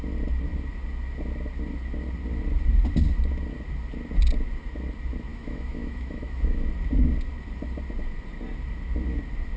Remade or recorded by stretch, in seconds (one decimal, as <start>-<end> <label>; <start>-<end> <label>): 0.0-5.3 recorded; 5.3-6.6 remade; 6.6-9.6 recorded